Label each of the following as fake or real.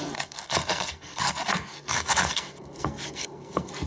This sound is fake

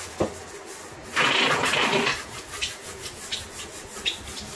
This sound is real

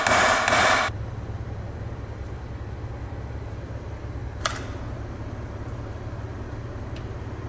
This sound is real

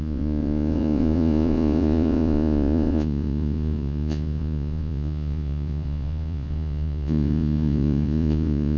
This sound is fake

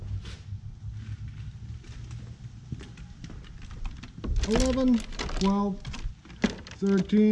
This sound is real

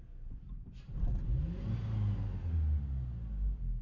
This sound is real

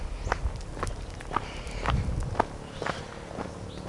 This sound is real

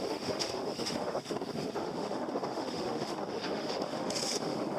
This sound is fake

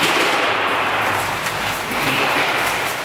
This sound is fake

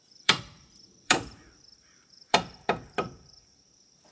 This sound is fake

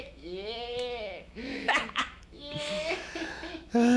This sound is fake